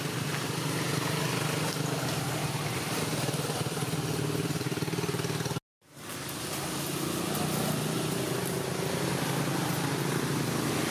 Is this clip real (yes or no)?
yes